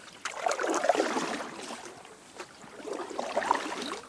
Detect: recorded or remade recorded